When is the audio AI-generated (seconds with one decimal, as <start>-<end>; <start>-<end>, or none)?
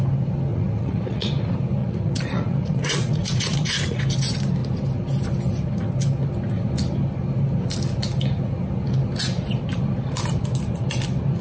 0.5-1.3; 1.8-4.0